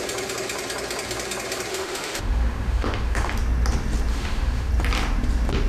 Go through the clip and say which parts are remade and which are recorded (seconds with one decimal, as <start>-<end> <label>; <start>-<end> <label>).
0.0-1.7 recorded; 1.7-3.3 remade; 3.3-4.1 recorded; 4.1-4.7 remade; 4.7-5.7 recorded

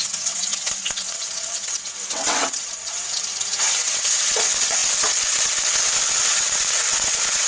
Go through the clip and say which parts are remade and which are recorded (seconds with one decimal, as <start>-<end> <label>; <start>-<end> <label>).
0.0-7.5 remade

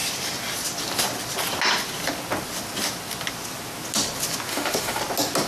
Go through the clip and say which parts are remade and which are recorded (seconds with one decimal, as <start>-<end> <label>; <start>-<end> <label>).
0.0-4.5 recorded; 4.5-5.0 remade; 5.0-5.5 recorded